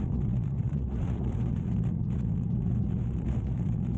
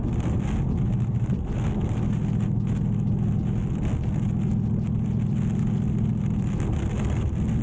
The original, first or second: second